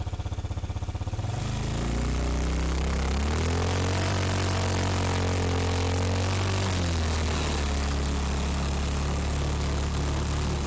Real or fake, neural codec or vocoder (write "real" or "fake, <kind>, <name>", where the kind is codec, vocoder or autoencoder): real